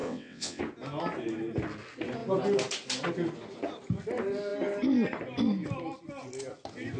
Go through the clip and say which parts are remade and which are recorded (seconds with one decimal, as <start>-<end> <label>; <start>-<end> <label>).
0.0-0.6 remade; 0.6-7.0 recorded